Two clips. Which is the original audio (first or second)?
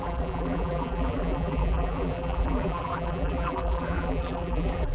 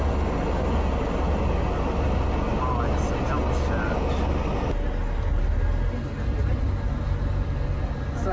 second